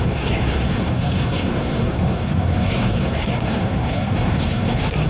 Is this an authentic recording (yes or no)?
no